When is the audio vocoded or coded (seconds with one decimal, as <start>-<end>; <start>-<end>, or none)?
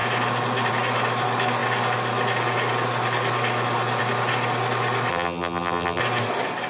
5.1-6.0